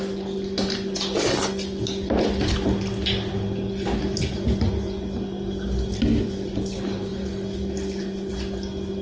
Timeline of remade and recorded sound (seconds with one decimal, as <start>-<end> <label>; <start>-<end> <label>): 0.0-9.0 recorded